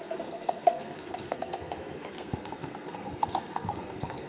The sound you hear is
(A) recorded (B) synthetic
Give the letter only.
B